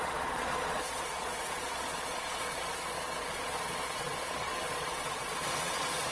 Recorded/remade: remade